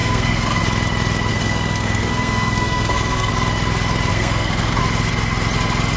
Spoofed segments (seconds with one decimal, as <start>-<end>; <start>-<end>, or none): 0.0-0.6; 1.3-3.3; 4.1-4.8

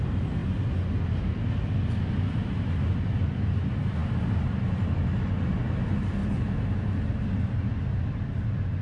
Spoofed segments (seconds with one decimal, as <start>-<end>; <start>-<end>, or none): none

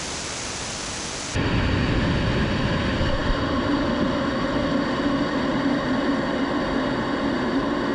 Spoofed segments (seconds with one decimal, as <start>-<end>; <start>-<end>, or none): none

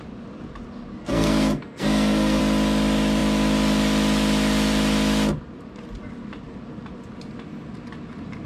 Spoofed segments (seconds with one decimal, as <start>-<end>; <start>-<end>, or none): 1.0-2.4

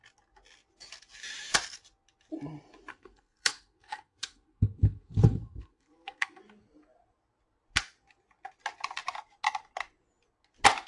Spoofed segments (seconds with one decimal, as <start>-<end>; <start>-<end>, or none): 2.9-6.4

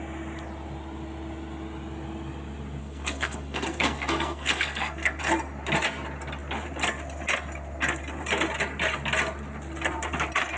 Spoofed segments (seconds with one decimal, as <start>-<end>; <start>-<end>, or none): 2.8-5.2

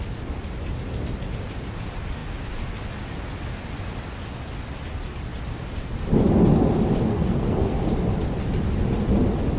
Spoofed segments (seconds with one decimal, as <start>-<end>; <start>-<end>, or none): 7.1-7.8

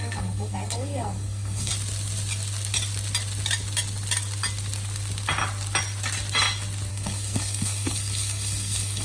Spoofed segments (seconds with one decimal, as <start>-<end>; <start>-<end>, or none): 0.0-1.7; 6.9-9.0